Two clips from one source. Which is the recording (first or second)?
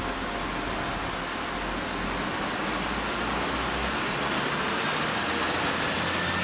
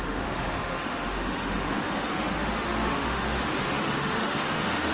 first